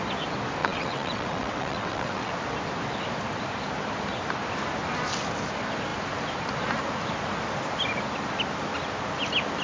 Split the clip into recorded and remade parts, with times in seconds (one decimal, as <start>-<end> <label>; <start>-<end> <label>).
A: 0.0-0.6 recorded; 0.6-2.3 remade; 2.3-9.6 recorded